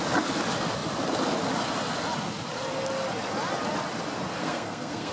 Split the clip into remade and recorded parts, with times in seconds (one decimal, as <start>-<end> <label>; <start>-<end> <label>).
0.0-4.4 recorded; 4.4-5.1 remade